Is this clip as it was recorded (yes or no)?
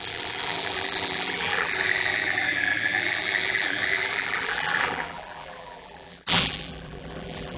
no